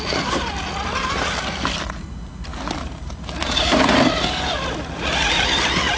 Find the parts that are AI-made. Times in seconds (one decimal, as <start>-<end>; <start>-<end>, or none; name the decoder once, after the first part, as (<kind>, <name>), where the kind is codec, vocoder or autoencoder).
none